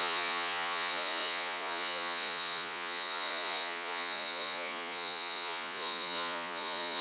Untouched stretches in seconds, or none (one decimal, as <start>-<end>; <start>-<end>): none